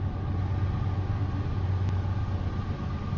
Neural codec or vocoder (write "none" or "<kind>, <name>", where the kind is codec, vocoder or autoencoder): vocoder, BigVGAN v2